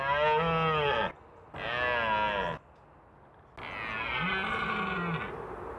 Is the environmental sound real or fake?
real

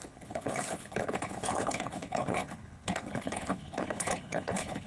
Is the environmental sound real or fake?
fake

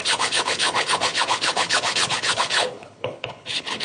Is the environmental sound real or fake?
fake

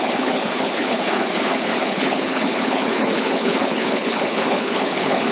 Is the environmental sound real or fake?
fake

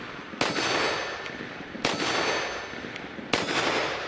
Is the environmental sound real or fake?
real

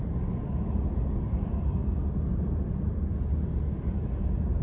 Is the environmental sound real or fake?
real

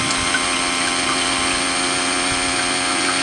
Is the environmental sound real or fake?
real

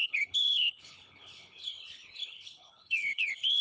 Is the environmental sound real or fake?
fake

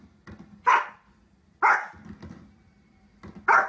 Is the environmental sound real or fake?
real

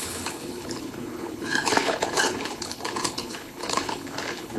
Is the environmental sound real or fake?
fake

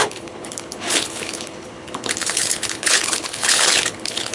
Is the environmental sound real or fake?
fake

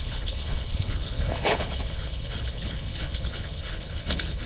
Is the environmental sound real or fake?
fake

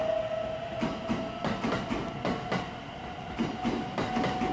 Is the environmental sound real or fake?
real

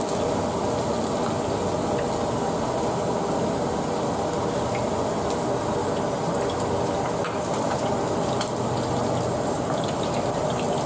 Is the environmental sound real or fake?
real